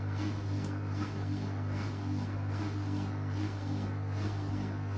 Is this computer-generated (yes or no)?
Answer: yes